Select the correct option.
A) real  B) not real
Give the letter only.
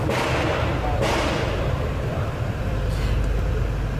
A